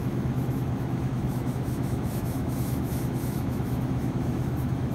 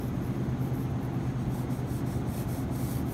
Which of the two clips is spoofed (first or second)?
first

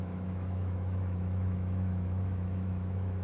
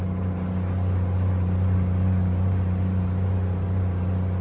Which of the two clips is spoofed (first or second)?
first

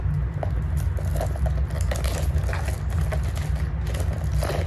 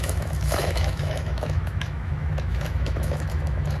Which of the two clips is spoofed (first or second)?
second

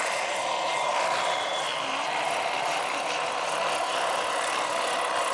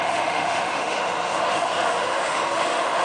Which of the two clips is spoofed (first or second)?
second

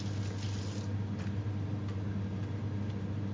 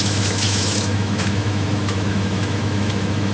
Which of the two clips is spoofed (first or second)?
second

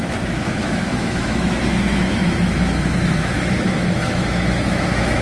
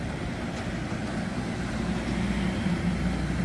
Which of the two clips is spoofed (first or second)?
first